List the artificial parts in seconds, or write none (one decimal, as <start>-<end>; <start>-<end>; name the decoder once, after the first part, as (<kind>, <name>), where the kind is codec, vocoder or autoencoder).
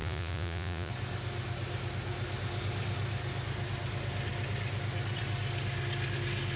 0.0-0.9 (vocoder, Vocos)